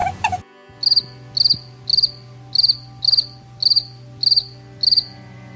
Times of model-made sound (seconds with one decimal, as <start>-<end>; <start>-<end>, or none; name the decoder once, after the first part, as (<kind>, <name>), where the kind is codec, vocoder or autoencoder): none